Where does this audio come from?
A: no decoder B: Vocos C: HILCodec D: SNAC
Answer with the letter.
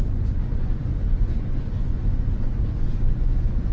B